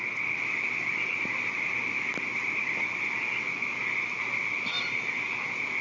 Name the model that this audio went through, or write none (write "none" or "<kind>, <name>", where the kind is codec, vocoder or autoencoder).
none